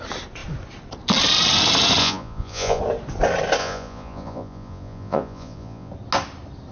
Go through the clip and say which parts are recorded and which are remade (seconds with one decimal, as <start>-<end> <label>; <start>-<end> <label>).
0.0-2.0 recorded; 2.0-2.8 remade; 2.8-3.6 recorded; 3.6-5.9 remade; 5.9-6.7 recorded